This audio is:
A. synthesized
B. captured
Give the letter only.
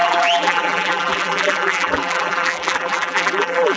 A